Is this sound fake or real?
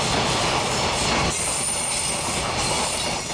real